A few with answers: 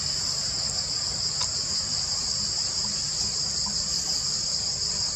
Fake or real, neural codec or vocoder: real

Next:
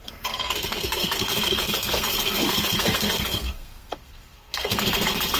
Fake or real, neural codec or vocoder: fake, codec, SNAC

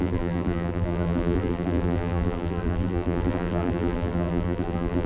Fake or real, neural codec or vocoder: fake, vocoder, BigVGAN v2